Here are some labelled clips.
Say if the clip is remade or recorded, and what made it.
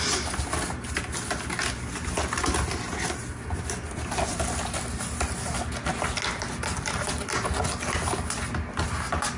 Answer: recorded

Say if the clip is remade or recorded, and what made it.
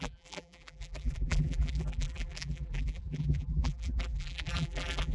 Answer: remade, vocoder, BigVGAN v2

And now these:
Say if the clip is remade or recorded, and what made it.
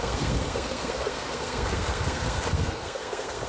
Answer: remade, codec, SNAC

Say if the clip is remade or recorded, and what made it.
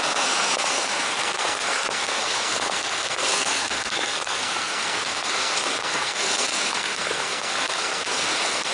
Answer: remade, codec, SNAC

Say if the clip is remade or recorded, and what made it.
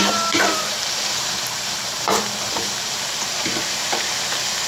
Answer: remade, vocoder, BigVGAN v2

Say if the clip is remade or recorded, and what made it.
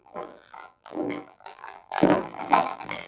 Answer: remade, vocoder, BigVGAN v2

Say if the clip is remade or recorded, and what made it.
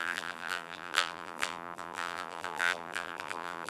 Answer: remade, vocoder, BigVGAN v2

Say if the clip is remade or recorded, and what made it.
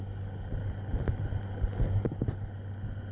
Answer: recorded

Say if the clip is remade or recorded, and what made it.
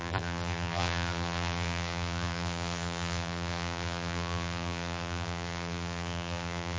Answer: remade, vocoder, BigVGAN v2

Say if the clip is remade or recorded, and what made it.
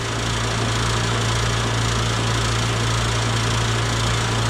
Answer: recorded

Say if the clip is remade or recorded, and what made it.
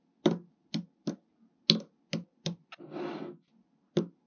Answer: recorded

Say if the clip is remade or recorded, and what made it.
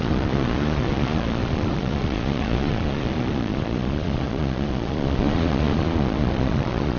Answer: remade, vocoder, Vocos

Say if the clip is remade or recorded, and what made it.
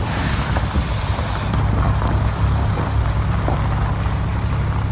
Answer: recorded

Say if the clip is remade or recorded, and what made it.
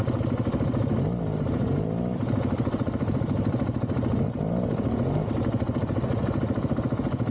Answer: recorded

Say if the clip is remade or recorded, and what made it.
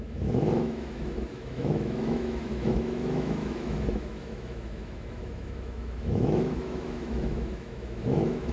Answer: remade, autoencoder, DAC-VAE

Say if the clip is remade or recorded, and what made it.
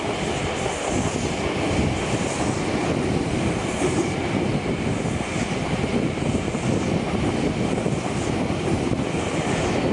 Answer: recorded